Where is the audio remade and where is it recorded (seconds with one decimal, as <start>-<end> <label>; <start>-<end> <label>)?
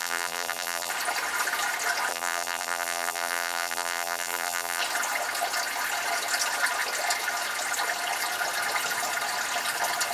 0.0-0.9 remade; 0.9-2.1 recorded; 2.1-4.8 remade; 4.8-10.1 recorded